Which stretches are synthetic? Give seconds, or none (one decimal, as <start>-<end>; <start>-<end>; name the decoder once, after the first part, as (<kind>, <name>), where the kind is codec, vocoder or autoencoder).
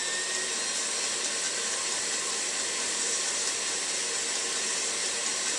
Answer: 5.0-5.6 (vocoder, BigVGAN v2)